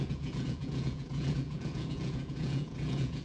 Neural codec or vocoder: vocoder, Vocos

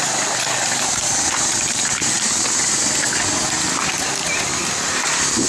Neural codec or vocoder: none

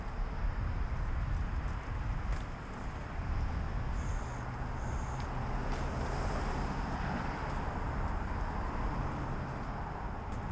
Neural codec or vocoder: none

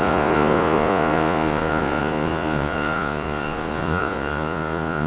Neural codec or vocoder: vocoder, Vocos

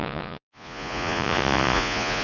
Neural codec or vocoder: vocoder, Vocos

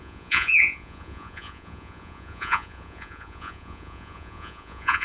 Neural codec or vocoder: vocoder, Vocos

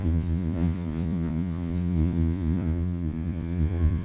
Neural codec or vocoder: vocoder, Vocos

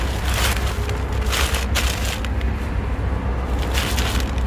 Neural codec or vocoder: none